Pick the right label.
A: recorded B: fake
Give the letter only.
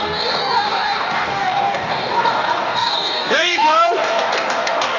B